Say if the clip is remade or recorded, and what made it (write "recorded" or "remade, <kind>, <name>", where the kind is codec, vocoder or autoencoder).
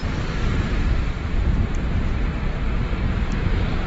remade, vocoder, BigVGAN v2